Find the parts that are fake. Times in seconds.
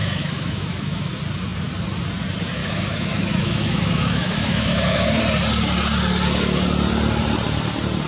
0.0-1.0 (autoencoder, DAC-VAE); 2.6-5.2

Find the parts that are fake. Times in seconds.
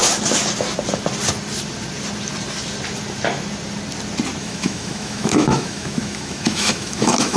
4.4-7.4 (autoencoder, DAC-VAE)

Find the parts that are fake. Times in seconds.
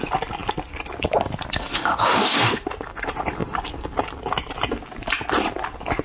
1.6-2.6 (autoencoder, DAC-VAE)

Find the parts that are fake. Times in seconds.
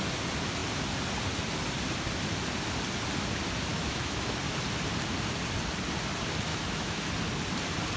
3.7-4.4 (autoencoder, DAC-VAE); 6.5-7.1